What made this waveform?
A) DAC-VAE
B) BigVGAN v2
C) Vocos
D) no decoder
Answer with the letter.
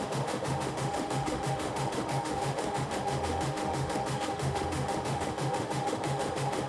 A